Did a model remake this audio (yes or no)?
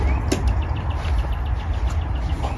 no